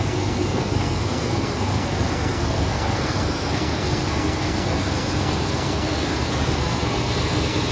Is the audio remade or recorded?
remade